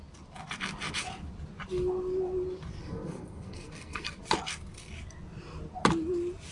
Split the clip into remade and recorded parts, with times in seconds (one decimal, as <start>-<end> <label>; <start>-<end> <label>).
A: 0.0-2.8 recorded; 2.8-4.2 remade; 4.2-6.5 recorded